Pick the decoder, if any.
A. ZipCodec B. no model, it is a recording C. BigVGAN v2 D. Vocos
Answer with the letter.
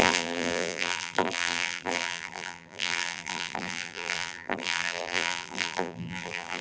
C